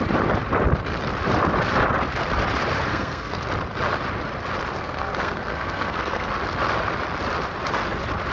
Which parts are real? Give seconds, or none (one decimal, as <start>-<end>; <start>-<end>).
0.0-2.9; 3.4-4.7; 6.3-8.3